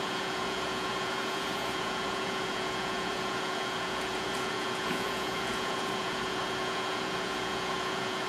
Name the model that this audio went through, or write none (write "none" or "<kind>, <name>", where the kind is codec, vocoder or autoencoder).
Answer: vocoder, Vocos